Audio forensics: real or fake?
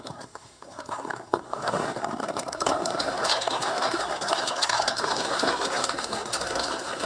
fake